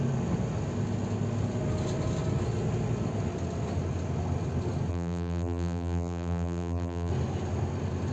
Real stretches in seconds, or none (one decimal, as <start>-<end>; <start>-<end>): 0.0-4.9; 7.1-8.1